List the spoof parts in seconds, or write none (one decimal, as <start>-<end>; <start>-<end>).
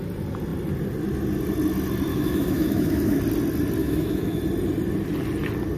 2.1-3.2; 3.8-4.4